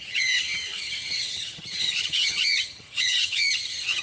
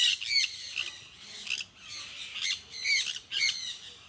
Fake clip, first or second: first